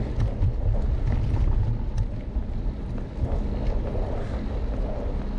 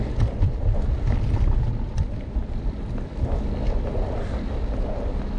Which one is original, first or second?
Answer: first